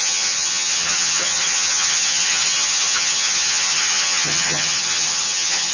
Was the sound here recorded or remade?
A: remade